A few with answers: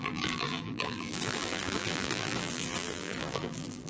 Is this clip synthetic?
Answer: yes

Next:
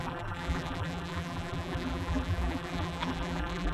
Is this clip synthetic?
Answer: yes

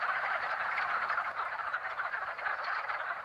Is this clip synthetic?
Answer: yes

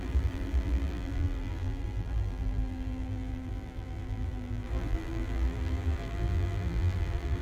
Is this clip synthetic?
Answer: yes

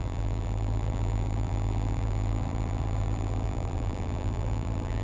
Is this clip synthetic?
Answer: yes